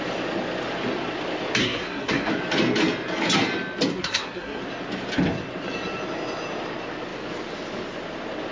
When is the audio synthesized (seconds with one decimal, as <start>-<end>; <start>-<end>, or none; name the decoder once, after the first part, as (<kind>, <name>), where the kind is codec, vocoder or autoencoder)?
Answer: 1.6-2.3 (codec, SNAC); 3.9-4.6